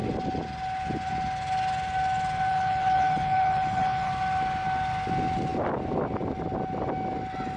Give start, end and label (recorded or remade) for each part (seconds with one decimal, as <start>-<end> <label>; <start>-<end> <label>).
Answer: 0.0-2.5 recorded; 2.5-4.1 remade; 4.1-7.6 recorded